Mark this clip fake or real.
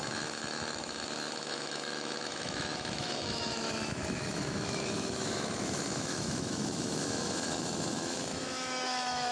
fake